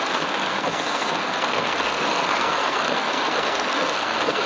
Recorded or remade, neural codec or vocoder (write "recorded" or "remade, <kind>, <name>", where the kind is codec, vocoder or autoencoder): remade, codec, SNAC